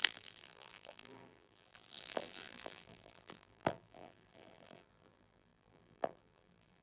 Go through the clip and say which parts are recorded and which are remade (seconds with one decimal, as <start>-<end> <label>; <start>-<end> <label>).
0.0-6.8 remade

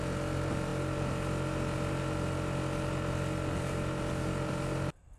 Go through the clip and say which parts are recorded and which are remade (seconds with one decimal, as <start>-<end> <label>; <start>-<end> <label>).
0.0-5.2 recorded

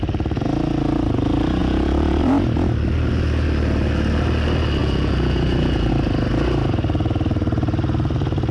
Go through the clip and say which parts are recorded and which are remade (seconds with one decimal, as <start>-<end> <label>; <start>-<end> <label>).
0.0-1.6 recorded; 1.6-2.2 remade; 2.2-4.8 recorded; 4.8-5.9 remade; 5.9-8.5 recorded

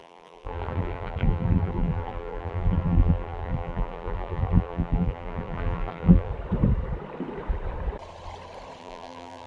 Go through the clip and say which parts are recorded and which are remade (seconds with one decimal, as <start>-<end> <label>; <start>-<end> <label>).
0.0-6.3 remade; 6.3-8.8 recorded; 8.8-9.5 remade

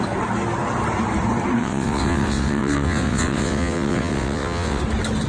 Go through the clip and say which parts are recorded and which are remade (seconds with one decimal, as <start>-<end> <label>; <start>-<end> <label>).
0.0-1.6 recorded; 1.6-4.8 remade; 4.8-5.3 recorded

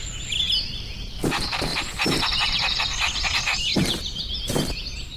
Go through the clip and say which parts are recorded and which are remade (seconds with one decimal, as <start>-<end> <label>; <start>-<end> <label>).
0.0-1.7 recorded; 1.7-2.7 remade; 2.7-3.7 recorded; 3.7-4.4 remade; 4.4-5.2 recorded

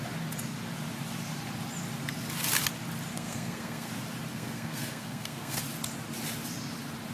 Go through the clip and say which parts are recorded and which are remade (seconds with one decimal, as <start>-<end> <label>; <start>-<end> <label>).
0.0-3.1 recorded; 3.1-3.9 remade; 3.9-4.3 recorded; 4.3-5.6 remade; 5.6-7.1 recorded